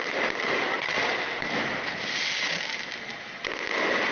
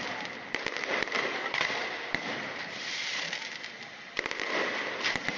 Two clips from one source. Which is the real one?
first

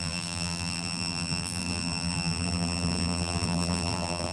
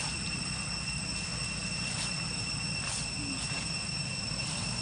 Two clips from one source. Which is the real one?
second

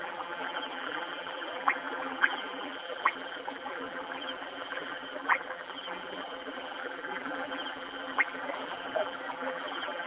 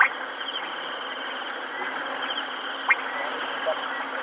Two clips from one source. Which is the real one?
second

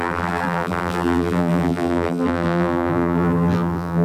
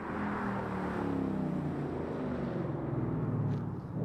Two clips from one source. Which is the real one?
second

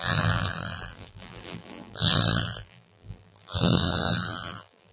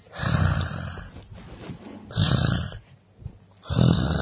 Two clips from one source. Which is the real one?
second